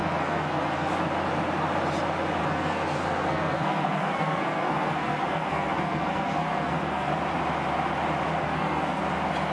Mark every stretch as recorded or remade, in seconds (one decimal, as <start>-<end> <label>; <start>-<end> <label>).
0.0-0.9 remade; 0.9-2.4 recorded; 2.4-7.1 remade; 7.1-8.4 recorded; 8.4-9.0 remade; 9.0-9.5 recorded